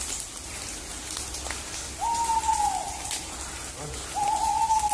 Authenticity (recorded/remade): recorded